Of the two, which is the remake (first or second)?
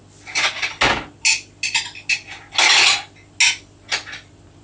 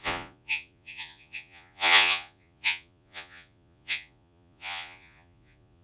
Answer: second